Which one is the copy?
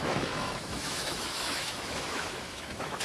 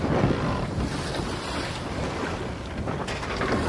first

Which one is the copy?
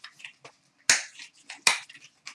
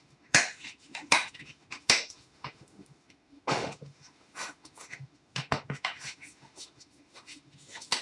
second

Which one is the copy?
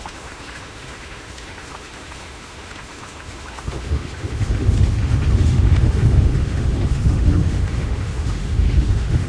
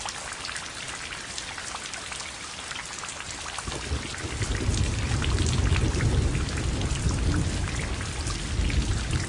first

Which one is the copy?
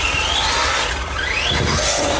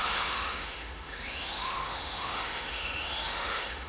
second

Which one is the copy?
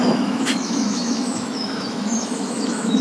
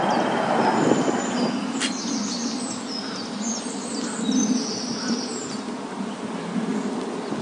first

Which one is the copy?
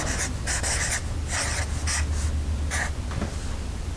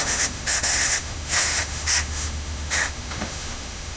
second